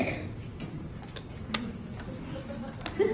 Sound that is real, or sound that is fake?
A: real